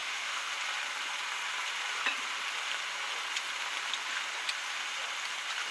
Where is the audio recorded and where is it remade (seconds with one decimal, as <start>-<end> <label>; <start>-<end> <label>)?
0.0-0.5 remade; 0.5-5.7 recorded